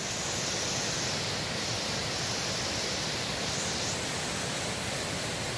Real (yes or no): yes